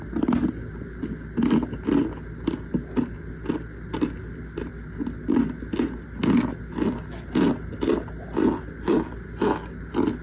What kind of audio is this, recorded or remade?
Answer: recorded